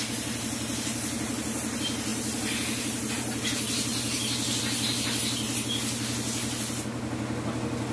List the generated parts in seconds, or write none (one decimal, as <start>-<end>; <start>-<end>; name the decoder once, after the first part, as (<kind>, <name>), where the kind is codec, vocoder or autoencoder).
none